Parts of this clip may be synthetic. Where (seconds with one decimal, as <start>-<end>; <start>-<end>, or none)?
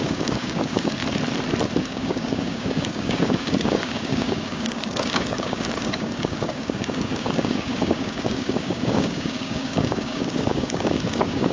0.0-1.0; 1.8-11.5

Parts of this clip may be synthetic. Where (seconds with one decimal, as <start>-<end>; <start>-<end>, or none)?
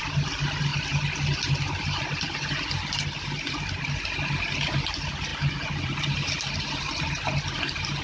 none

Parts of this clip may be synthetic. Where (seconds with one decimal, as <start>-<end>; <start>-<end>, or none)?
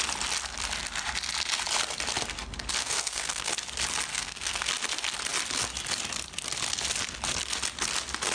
2.8-3.5; 4.1-4.7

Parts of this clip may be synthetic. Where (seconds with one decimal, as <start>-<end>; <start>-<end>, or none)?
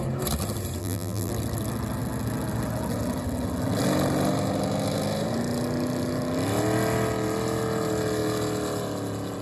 0.8-1.3